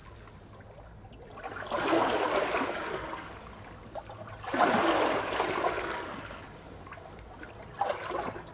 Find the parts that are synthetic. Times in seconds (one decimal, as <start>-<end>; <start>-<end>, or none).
none